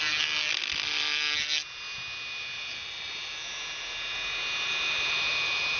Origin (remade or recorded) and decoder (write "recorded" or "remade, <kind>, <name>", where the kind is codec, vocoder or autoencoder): recorded